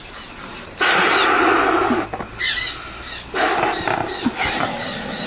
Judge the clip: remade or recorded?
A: recorded